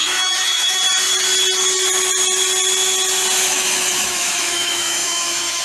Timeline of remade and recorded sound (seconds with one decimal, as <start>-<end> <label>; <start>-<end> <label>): 0.0-0.8 remade; 0.8-3.5 recorded; 3.5-5.6 remade